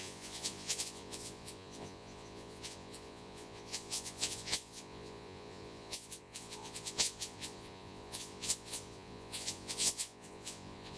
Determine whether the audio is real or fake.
fake